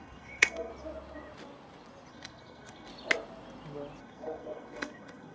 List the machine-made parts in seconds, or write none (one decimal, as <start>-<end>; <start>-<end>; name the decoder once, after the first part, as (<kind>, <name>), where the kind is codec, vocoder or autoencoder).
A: 0.0-0.7 (codec, SNAC); 2.1-2.9; 4.0-5.3